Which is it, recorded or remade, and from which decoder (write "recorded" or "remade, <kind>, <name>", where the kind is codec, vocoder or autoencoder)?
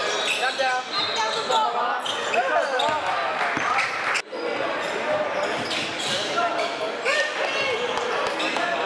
recorded